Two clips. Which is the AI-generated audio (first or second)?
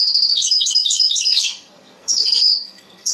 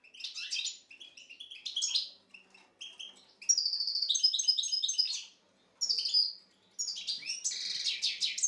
first